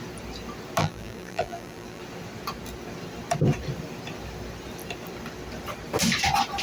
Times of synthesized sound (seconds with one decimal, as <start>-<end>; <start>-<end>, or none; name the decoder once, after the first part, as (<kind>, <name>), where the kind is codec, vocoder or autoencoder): 0.8-2.0 (vocoder, BigVGAN v2)